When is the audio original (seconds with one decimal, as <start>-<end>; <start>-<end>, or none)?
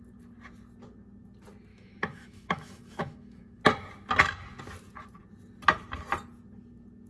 0.0-1.7; 3.6-7.1